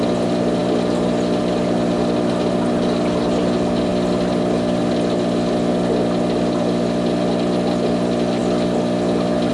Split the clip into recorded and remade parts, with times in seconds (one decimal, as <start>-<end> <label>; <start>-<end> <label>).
0.0-9.5 recorded